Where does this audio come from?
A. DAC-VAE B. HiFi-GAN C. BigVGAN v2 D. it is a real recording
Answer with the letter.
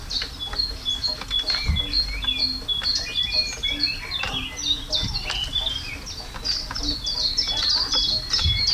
D